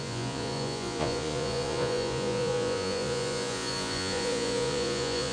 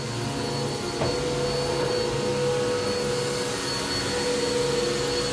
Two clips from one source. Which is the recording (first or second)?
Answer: second